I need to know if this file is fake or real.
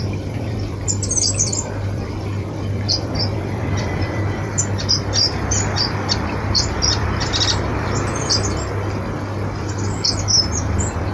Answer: fake